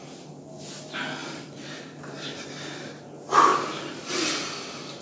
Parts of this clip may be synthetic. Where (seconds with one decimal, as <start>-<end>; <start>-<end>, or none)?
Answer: 1.2-2.3